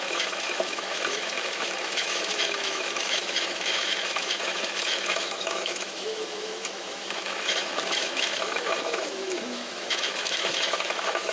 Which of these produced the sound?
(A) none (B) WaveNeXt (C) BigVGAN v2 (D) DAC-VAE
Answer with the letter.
D